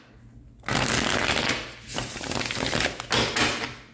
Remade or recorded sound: recorded